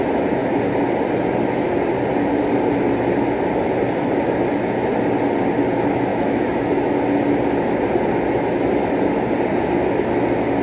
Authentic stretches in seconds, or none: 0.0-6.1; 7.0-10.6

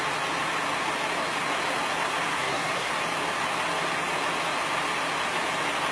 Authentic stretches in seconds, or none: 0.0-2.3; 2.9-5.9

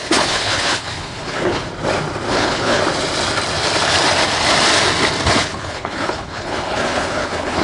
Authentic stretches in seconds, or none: 1.6-2.3; 2.8-5.4